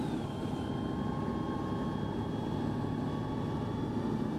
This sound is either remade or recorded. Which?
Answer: recorded